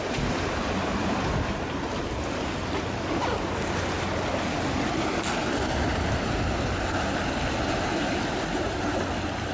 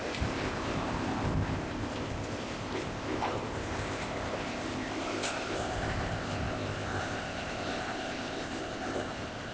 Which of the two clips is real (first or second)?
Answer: first